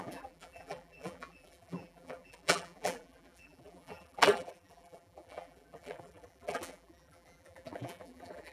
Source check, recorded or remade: remade